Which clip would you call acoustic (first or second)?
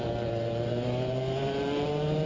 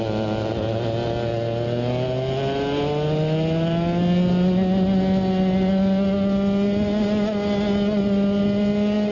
second